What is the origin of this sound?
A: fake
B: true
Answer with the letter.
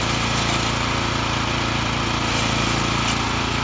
B